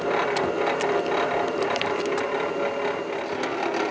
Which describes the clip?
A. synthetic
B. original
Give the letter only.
B